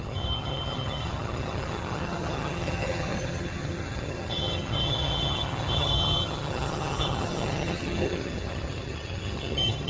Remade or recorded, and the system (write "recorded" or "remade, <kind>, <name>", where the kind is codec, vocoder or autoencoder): remade, vocoder, HiFi-GAN